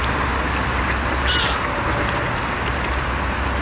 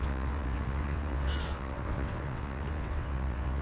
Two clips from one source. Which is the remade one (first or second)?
second